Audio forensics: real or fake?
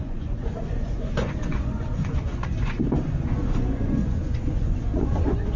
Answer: fake